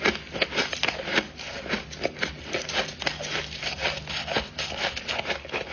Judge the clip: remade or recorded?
recorded